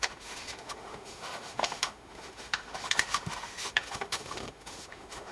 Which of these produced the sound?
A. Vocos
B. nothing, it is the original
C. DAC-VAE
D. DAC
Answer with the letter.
C